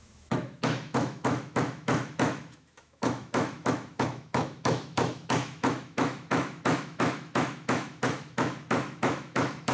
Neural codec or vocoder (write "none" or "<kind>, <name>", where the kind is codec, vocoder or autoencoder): autoencoder, DAC-VAE